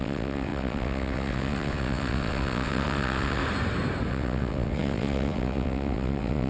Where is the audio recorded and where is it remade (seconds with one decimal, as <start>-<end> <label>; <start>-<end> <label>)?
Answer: 0.0-3.4 remade; 3.4-4.1 recorded; 4.1-6.5 remade